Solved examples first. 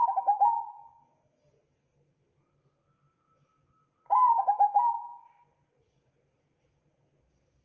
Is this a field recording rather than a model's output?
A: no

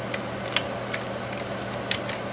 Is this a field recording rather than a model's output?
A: yes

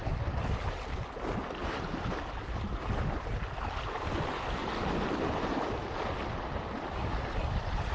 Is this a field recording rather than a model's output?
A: yes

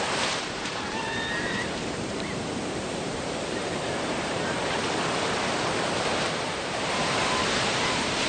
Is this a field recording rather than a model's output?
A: no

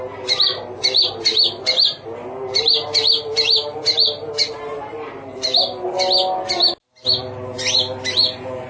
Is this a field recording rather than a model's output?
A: yes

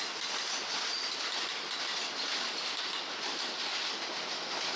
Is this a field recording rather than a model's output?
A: yes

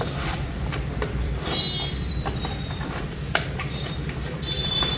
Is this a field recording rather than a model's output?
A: no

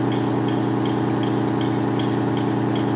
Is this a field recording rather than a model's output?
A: yes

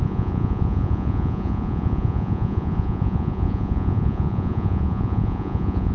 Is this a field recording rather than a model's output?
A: no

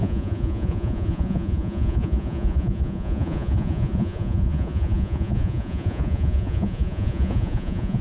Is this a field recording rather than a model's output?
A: no